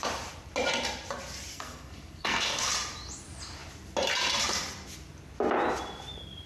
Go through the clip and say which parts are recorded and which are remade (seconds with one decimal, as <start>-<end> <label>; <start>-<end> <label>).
0.0-1.5 recorded; 1.5-2.7 remade; 2.7-6.5 recorded